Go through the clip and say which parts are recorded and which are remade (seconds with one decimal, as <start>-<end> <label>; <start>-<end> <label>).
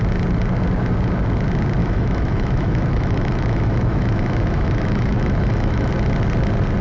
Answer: 0.0-1.8 recorded; 1.8-5.9 remade; 5.9-6.8 recorded